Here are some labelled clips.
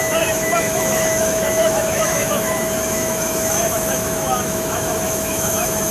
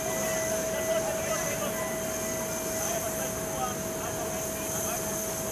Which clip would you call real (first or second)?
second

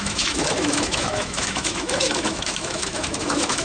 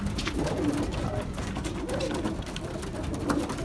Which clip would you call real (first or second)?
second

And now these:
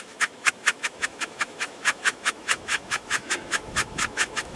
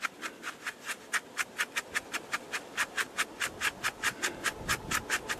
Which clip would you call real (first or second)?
second